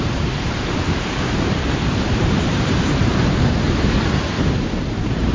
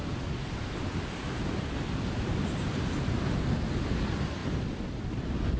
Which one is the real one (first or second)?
second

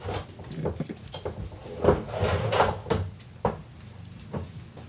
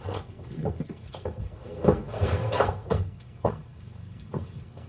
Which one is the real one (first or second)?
first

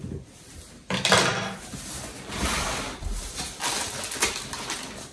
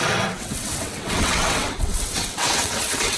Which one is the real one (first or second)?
first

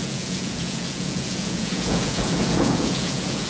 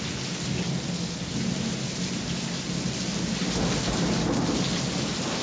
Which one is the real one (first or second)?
second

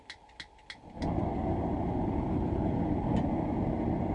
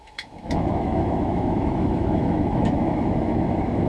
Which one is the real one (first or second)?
first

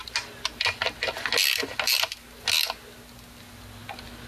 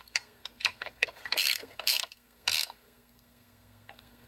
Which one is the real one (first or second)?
first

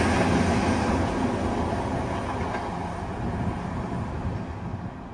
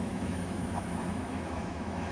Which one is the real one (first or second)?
first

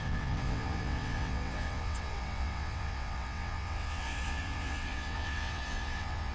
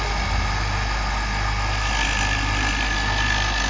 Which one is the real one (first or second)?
second